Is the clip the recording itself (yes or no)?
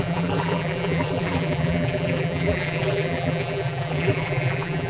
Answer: no